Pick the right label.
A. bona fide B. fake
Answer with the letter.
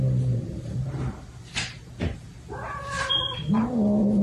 A